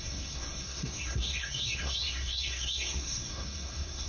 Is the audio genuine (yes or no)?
no